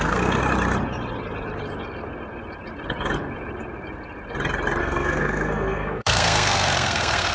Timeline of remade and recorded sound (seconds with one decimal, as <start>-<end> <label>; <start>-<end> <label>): 0.0-0.4 remade; 0.4-4.8 recorded; 4.8-7.3 remade